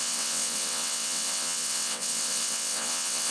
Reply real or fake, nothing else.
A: fake